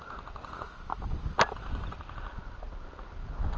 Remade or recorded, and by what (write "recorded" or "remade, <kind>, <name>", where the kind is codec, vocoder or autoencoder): recorded